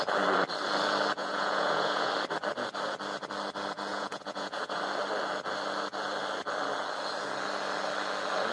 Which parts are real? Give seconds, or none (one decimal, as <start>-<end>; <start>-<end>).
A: 0.0-1.2; 2.1-3.9; 4.8-8.5

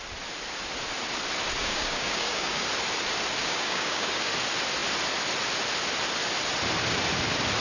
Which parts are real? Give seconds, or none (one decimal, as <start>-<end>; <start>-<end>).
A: 0.0-1.6; 2.6-3.4; 4.3-7.6

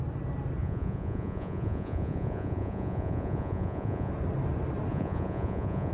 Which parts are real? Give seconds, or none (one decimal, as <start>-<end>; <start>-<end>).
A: 0.0-0.6; 4.1-4.9

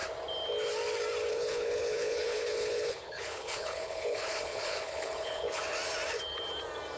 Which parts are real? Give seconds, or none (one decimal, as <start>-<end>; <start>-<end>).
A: 0.0-1.3; 5.6-7.0

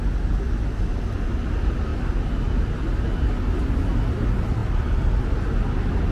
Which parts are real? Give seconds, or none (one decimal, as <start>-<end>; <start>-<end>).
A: 0.0-6.1

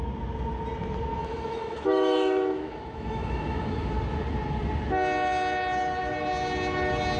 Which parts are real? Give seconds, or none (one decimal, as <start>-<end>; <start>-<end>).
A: 0.0-1.2; 4.0-7.2

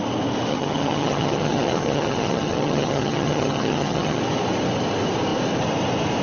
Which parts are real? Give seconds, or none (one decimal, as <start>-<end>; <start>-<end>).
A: 0.0-0.5; 4.2-6.2

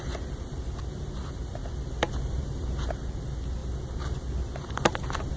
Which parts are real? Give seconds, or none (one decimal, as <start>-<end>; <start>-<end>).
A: 0.0-1.6; 2.4-5.4